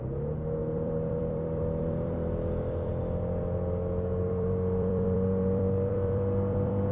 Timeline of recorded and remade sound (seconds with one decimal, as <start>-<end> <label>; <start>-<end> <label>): 0.0-0.6 recorded; 0.6-2.9 remade; 2.9-4.1 recorded; 4.1-6.9 remade